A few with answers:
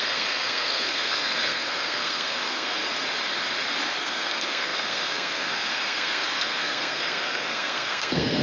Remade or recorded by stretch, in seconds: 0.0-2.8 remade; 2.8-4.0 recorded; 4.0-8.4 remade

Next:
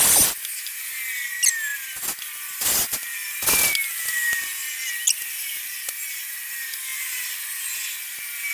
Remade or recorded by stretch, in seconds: 0.0-8.5 recorded

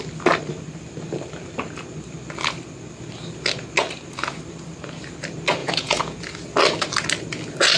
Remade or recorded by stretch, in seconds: 0.0-5.6 recorded; 5.6-6.2 remade; 6.2-7.8 recorded

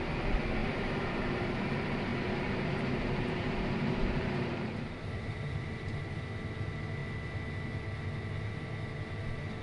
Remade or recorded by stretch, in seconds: 0.0-0.6 recorded; 0.6-1.5 remade; 1.5-2.1 recorded; 2.1-6.2 remade; 6.2-9.6 recorded